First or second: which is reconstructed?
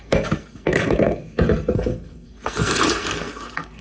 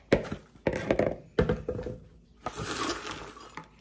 first